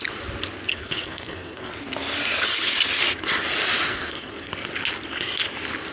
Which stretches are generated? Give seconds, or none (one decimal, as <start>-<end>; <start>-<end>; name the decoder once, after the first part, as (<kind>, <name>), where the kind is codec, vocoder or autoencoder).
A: 0.7-1.7 (codec, SNAC); 3.9-4.5